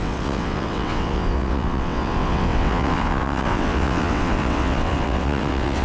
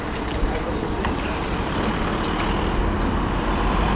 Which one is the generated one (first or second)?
first